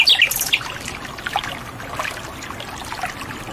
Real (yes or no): yes